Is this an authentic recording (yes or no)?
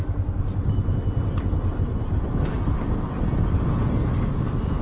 yes